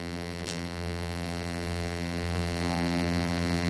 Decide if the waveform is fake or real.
fake